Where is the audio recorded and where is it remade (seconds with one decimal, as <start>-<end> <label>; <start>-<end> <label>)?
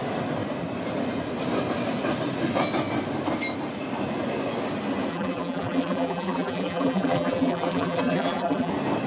0.0-5.1 recorded; 5.1-8.7 remade; 8.7-9.1 recorded